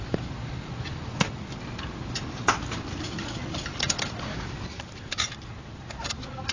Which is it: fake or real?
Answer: real